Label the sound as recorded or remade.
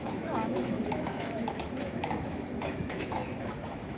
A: remade